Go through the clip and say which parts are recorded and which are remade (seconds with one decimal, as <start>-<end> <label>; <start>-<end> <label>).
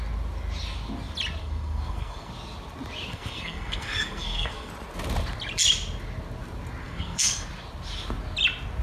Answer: 0.0-1.4 recorded; 1.4-2.3 remade; 2.3-3.1 recorded; 3.1-4.7 remade; 4.7-6.8 recorded; 6.8-7.5 remade; 7.5-8.8 recorded